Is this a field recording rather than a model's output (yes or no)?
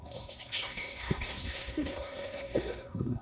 no